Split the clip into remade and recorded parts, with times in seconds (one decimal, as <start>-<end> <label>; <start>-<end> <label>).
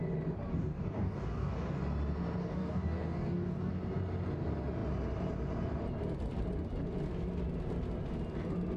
0.0-0.5 recorded; 0.5-1.8 remade; 1.8-2.4 recorded; 2.4-3.7 remade; 3.7-8.8 recorded